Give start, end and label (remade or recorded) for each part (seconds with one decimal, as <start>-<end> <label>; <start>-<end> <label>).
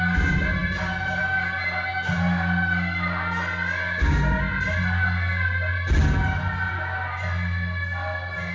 0.0-8.5 recorded